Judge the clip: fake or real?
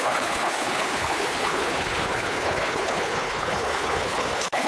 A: fake